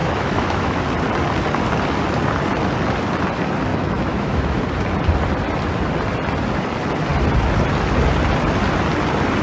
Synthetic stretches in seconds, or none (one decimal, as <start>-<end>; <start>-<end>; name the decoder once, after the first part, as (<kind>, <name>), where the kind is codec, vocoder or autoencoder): 0.0-0.8 (autoencoder, DAC-VAE); 3.7-4.6